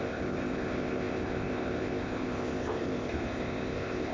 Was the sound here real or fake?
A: fake